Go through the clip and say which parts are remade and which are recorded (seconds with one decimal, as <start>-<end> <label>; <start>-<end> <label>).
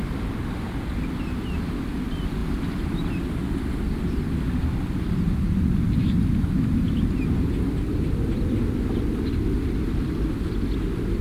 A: 0.0-11.2 recorded